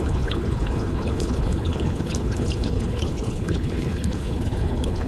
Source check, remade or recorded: remade